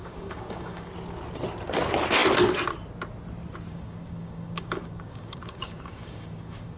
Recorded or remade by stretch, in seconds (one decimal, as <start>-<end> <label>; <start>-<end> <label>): 0.0-0.9 remade; 0.9-3.7 recorded; 3.7-6.8 remade